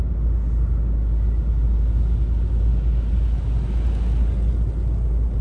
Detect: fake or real real